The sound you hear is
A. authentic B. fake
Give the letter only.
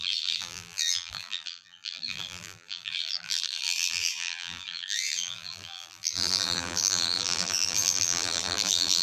B